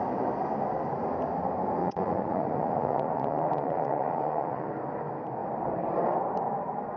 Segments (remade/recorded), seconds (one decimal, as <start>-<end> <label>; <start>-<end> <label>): 0.0-1.8 recorded; 1.8-4.7 remade; 4.7-7.0 recorded